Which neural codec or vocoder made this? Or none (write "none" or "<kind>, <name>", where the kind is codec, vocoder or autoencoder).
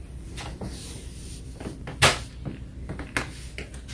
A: none